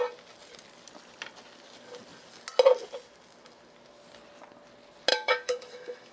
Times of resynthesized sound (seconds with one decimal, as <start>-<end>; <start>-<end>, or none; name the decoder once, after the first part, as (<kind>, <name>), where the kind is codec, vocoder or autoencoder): 5.1-6.1 (autoencoder, DAC-VAE)